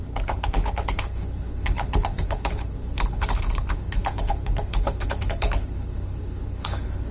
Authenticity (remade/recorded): remade